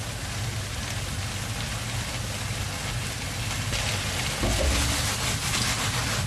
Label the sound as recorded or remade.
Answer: recorded